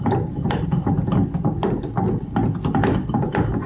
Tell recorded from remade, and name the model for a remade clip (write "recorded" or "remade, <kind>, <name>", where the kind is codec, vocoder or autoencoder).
remade, vocoder, BigVGAN v2